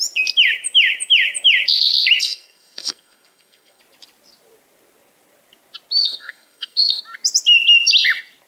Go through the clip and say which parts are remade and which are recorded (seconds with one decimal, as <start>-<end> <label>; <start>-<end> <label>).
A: 0.0-2.2 recorded; 2.2-3.8 remade; 3.8-6.0 recorded; 6.0-7.0 remade; 7.0-8.5 recorded